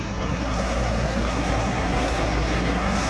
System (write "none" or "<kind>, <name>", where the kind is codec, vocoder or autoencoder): codec, SNAC